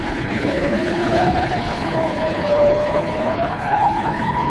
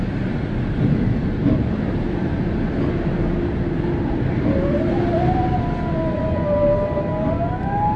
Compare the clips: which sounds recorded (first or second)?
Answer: second